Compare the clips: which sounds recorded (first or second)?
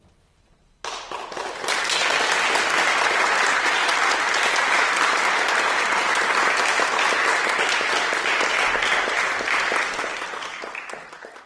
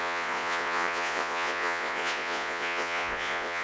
first